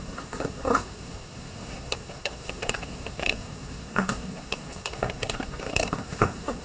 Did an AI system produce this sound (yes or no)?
yes